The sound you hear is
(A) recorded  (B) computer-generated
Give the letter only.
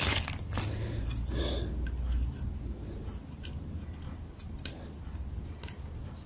A